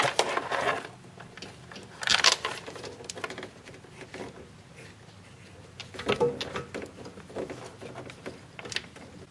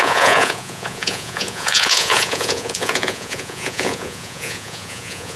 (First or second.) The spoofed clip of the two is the second